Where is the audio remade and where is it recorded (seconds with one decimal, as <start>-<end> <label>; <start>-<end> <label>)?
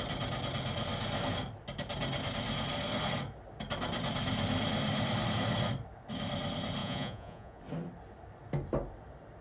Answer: 0.0-6.8 recorded; 6.8-7.6 remade; 7.6-9.4 recorded